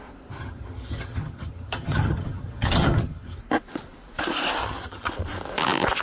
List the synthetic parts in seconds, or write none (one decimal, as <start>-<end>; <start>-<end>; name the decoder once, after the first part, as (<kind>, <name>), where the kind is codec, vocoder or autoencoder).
0.4-3.4 (vocoder, HiFi-GAN); 4.6-5.1